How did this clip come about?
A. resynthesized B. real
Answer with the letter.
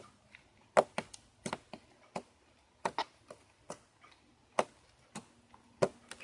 B